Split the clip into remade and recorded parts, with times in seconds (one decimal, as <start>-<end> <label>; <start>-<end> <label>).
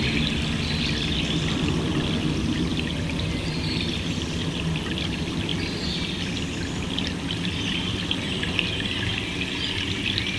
0.0-10.4 recorded